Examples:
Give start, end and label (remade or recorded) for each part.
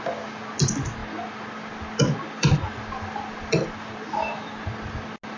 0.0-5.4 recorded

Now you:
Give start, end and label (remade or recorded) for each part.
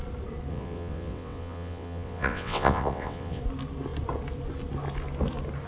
0.0-0.5 recorded; 0.5-3.4 remade; 3.4-5.7 recorded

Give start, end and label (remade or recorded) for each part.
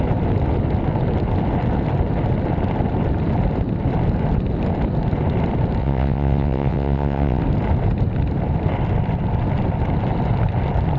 0.0-5.8 recorded; 5.8-7.4 remade; 7.4-11.0 recorded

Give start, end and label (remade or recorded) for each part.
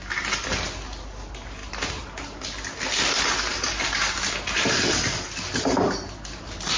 0.0-6.8 recorded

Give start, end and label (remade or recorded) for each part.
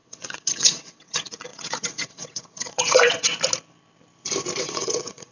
0.0-3.3 remade; 3.3-4.6 recorded; 4.6-5.3 remade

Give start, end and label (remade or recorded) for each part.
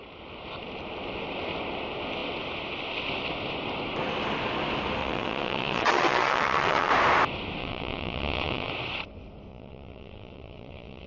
0.0-5.0 recorded; 5.0-6.9 remade; 6.9-7.6 recorded; 7.6-8.7 remade; 8.7-9.5 recorded; 9.5-11.1 remade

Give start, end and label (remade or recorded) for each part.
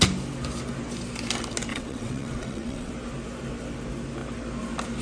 0.0-1.7 recorded; 1.7-2.9 remade; 2.9-5.0 recorded